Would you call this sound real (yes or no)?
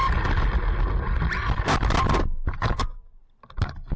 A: yes